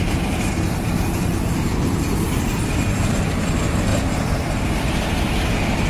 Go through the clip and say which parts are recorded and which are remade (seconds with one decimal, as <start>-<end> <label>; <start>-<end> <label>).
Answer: 0.0-3.9 remade; 3.9-5.5 recorded; 5.5-5.9 remade